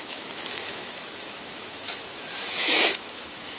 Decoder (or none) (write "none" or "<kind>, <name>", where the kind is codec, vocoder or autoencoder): autoencoder, DAC-VAE